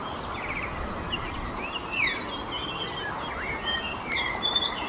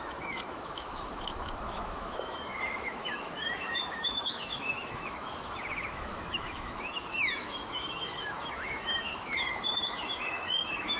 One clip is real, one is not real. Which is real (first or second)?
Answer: first